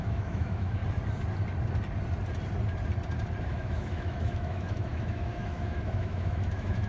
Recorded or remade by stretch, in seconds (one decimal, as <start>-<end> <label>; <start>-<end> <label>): 0.0-0.8 remade; 0.8-3.4 recorded; 3.4-6.9 remade

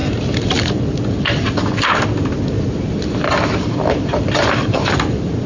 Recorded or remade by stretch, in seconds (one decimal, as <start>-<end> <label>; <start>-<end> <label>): 0.0-5.5 recorded

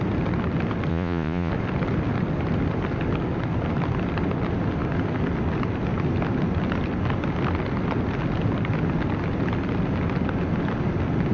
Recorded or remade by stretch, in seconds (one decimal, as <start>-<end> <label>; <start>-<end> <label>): 0.0-0.9 recorded; 0.9-1.5 remade; 1.5-11.3 recorded

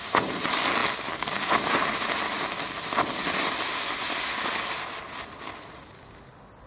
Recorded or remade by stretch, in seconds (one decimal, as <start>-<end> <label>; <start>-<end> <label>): 0.0-6.7 recorded

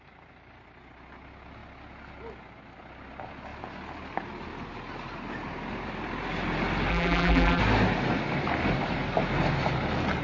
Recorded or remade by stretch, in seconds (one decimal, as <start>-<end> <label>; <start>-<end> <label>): 0.0-6.9 recorded; 6.9-7.6 remade; 7.6-10.2 recorded

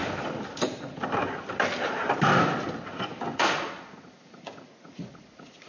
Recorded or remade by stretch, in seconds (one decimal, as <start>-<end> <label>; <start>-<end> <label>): 0.0-3.4 recorded; 3.4-5.7 remade

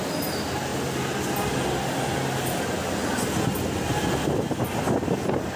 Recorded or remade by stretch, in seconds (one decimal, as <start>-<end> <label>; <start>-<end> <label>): 0.0-5.6 recorded

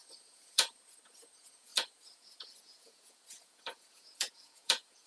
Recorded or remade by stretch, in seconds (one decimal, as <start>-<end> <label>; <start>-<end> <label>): 0.0-5.1 remade